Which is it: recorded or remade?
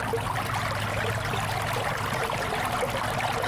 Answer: recorded